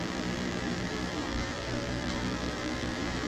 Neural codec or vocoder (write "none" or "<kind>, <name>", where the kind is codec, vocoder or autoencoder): vocoder, BigVGAN v2